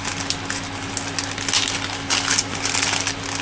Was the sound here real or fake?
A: real